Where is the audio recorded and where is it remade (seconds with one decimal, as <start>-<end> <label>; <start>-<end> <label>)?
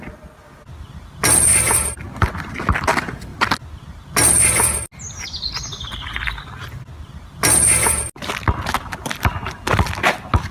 0.0-10.5 recorded